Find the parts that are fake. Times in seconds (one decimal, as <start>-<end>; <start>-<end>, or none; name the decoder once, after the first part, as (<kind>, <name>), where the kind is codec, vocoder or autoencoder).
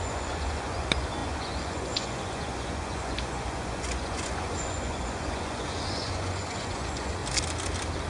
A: 0.0-7.2 (vocoder, Vocos)